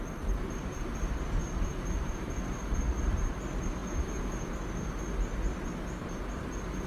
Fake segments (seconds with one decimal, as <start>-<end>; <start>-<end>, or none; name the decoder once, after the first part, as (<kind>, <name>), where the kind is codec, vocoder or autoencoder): 0.0-6.9 (vocoder, BigVGAN v2)

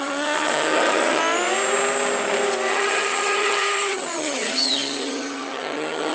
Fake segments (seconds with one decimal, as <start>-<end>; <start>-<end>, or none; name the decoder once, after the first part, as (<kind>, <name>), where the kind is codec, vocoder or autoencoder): 0.0-1.2 (vocoder, HiFi-GAN); 2.7-6.1